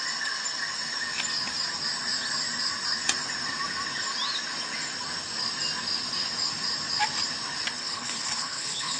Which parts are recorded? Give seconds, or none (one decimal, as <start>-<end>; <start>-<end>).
0.0-7.8